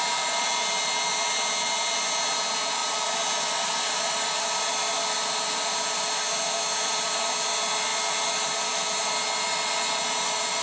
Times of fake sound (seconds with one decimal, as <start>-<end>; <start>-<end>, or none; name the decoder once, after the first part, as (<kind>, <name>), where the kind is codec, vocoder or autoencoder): none